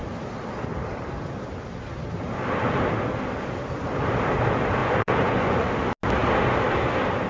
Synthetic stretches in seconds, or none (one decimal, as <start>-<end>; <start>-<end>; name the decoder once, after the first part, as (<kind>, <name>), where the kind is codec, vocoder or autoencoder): 4.8-5.7 (vocoder, Vocos)